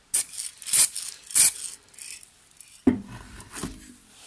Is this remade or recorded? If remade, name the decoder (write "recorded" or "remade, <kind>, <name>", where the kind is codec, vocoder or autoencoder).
recorded